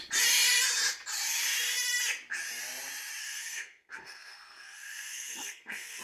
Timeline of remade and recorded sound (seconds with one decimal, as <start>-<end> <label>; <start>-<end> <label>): 0.0-3.2 recorded; 3.2-6.0 remade